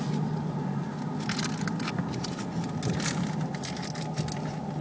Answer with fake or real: real